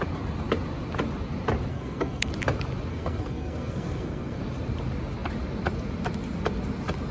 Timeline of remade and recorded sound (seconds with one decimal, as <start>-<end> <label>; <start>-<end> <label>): 0.0-1.7 recorded; 1.7-2.3 remade; 2.3-2.9 recorded; 2.9-4.4 remade; 4.4-7.1 recorded